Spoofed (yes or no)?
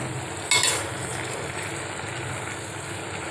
no